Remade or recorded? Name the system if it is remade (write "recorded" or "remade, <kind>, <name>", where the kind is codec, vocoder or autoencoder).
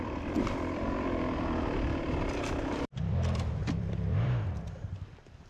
remade, vocoder, BigVGAN v2